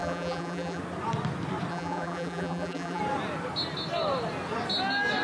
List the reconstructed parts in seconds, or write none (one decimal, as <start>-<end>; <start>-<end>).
0.0-0.8; 1.7-3.0